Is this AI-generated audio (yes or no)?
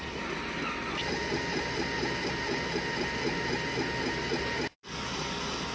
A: no